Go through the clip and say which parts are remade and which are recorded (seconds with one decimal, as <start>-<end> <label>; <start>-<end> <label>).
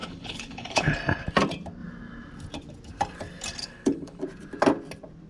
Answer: 0.0-0.9 remade; 0.9-3.6 recorded; 3.6-4.2 remade; 4.2-5.3 recorded